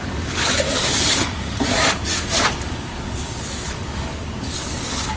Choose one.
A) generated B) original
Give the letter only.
A